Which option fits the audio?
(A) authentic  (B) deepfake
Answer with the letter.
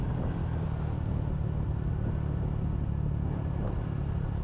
A